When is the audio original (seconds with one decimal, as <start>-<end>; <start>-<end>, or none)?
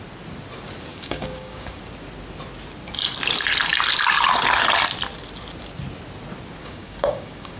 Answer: 0.0-0.9; 1.8-6.6